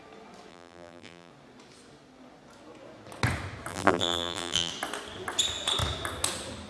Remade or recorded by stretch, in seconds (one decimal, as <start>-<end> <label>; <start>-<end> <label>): 0.0-0.5 recorded; 0.5-1.3 remade; 1.3-3.7 recorded; 3.7-4.7 remade; 4.7-6.7 recorded